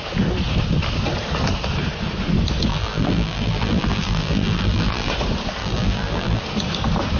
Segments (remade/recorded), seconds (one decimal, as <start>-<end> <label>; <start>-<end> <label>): 0.0-2.7 recorded; 2.7-5.1 remade; 5.1-5.6 recorded; 5.6-6.4 remade; 6.4-7.2 recorded